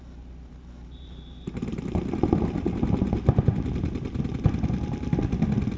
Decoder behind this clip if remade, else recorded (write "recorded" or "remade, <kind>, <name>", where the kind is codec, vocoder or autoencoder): recorded